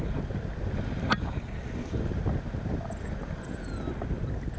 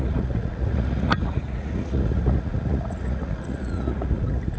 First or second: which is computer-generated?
second